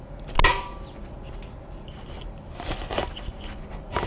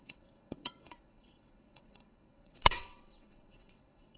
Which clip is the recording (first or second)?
first